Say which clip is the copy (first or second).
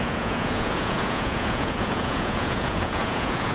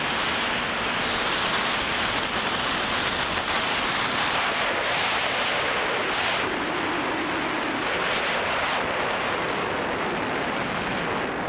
first